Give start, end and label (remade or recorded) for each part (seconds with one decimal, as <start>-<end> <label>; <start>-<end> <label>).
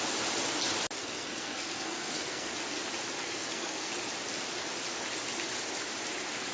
0.0-1.0 recorded; 1.0-2.5 remade; 2.5-3.2 recorded; 3.2-3.9 remade; 3.9-6.5 recorded